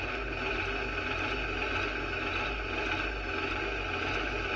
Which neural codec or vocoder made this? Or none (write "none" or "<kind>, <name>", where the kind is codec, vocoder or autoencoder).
none